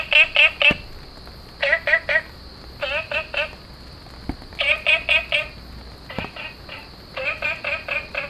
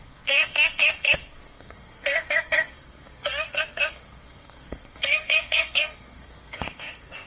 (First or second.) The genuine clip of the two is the first